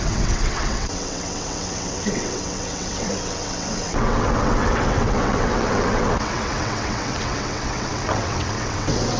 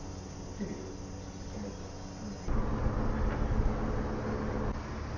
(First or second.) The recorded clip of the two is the second